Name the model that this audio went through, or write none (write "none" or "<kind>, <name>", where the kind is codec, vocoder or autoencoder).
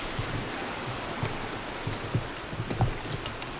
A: none